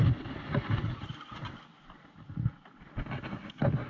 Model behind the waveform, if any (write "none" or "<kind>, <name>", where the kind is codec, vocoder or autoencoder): none